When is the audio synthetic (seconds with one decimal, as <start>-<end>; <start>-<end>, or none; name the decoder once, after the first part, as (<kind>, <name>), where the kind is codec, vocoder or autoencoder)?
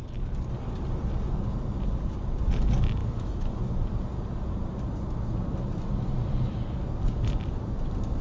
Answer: 3.0-3.7 (autoencoder, DAC-VAE)